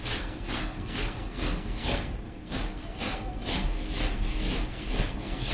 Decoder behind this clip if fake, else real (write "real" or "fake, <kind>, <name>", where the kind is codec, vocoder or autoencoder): fake, codec, SNAC